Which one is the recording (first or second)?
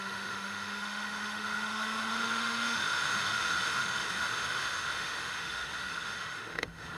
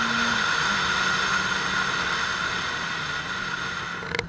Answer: second